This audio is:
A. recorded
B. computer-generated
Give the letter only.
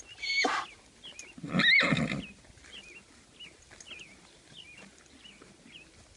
A